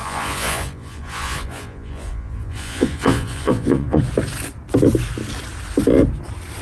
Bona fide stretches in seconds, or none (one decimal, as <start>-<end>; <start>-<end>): 4.0-6.6